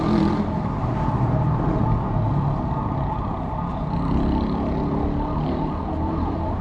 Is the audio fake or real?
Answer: real